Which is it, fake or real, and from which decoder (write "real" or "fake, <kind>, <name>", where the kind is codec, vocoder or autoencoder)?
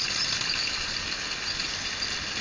real